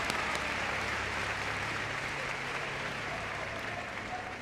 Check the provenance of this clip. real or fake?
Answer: fake